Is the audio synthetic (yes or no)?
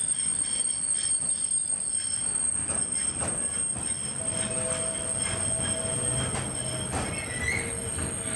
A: no